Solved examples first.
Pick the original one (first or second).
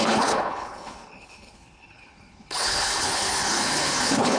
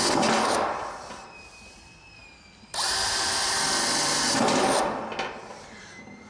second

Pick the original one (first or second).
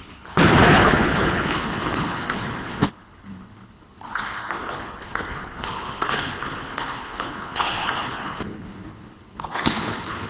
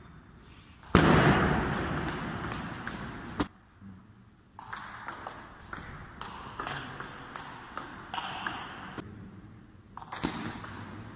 second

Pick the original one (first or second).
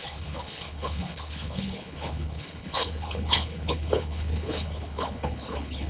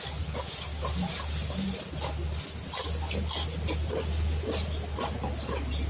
second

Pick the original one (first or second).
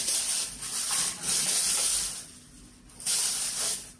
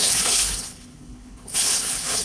first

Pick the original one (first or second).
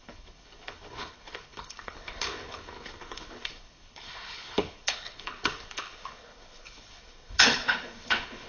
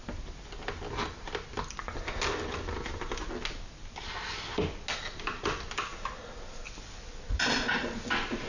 second